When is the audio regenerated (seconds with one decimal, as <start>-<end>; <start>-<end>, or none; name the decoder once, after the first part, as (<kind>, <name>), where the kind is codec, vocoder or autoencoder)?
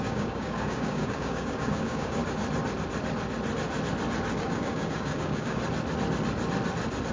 0.0-2.2 (codec, DAC); 4.4-5.6